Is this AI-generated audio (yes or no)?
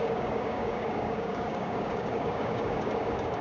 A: yes